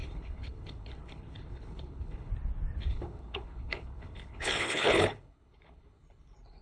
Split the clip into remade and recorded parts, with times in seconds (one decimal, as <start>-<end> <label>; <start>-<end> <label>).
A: 0.0-2.3 remade; 2.3-2.8 recorded; 2.8-6.6 remade

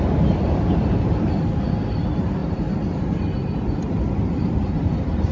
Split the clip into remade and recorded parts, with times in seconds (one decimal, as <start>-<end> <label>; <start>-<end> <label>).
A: 0.0-5.3 recorded